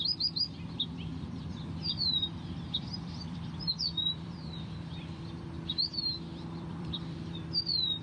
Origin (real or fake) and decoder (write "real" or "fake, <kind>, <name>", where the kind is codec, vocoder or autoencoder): fake, vocoder, BigVGAN v2